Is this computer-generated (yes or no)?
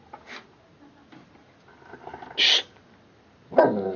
no